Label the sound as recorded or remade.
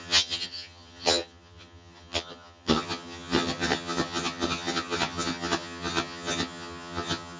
remade